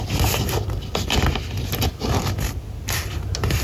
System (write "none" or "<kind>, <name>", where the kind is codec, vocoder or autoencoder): none